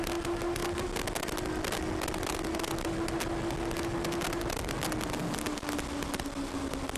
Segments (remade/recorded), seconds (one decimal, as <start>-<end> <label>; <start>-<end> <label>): 0.0-7.0 recorded